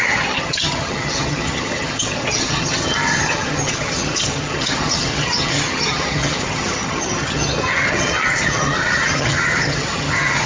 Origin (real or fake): fake